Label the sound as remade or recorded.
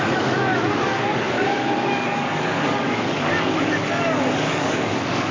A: remade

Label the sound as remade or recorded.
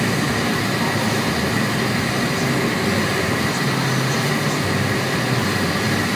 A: recorded